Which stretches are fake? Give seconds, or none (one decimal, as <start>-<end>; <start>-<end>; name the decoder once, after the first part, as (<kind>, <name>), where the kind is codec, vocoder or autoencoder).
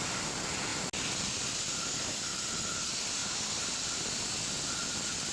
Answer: none